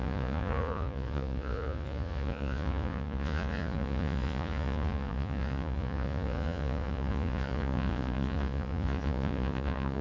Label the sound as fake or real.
fake